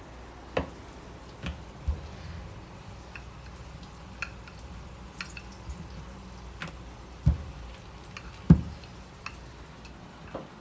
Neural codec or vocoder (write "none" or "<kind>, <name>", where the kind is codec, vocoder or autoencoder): none